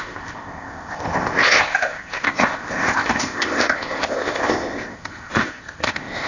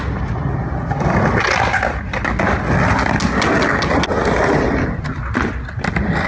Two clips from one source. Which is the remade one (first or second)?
first